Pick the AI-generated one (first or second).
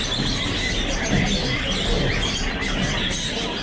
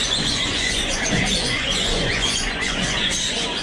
second